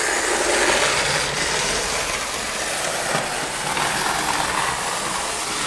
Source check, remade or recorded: recorded